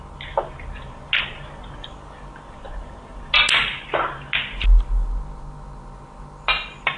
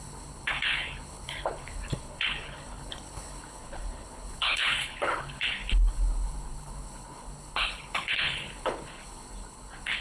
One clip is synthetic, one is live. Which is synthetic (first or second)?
second